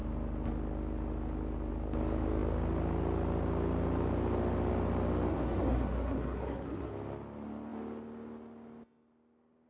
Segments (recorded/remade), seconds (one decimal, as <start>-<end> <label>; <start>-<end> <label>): 0.0-5.3 recorded; 5.3-6.9 remade; 6.9-9.7 recorded